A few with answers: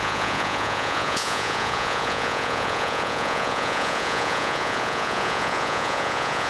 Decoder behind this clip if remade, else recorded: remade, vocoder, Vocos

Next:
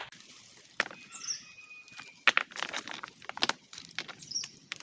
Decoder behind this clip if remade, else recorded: recorded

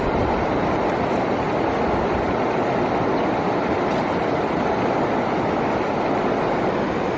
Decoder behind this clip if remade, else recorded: recorded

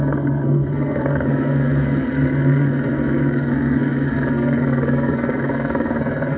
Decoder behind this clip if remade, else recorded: remade, codec, SNAC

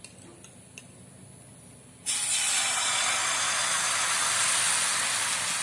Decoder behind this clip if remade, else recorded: recorded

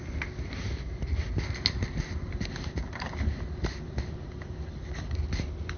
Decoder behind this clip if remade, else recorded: recorded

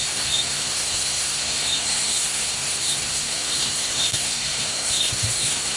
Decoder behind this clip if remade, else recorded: remade, codec, SNAC